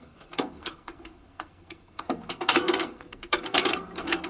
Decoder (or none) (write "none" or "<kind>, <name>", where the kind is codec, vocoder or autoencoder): codec, SNAC